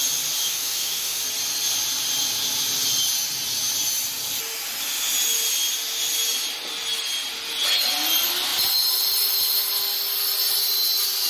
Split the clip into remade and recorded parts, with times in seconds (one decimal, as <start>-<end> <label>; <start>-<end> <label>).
0.0-0.4 recorded; 0.4-1.2 remade; 1.2-11.3 recorded

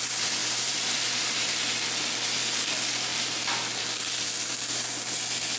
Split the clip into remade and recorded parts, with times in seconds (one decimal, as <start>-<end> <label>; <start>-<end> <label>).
0.0-0.4 recorded; 0.4-1.6 remade; 1.6-5.6 recorded

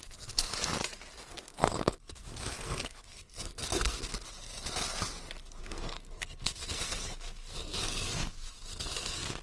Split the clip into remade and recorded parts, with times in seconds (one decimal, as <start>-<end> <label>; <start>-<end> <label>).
0.0-0.5 remade; 0.5-1.2 recorded; 1.2-4.1 remade; 4.1-5.6 recorded; 5.6-9.4 remade

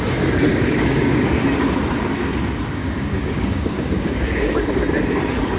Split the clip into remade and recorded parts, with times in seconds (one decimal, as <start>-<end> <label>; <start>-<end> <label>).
0.0-0.5 recorded; 0.5-1.4 remade; 1.4-2.8 recorded; 2.8-4.7 remade; 4.7-5.6 recorded

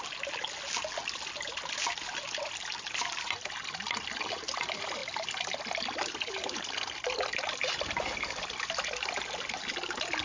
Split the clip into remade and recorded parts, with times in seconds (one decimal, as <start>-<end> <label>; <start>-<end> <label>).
0.0-10.2 recorded

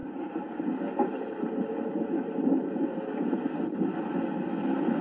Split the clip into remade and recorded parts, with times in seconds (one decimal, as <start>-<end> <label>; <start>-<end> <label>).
0.0-3.0 remade; 3.0-5.0 recorded

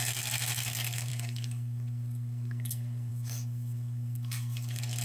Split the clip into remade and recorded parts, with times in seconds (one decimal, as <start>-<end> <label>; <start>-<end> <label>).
0.0-5.0 remade

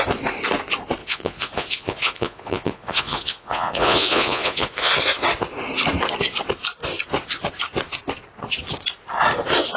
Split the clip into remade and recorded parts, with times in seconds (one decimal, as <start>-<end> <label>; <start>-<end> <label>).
0.0-1.0 recorded; 1.0-4.9 remade; 4.9-9.8 recorded